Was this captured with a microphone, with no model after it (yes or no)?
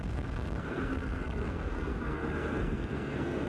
no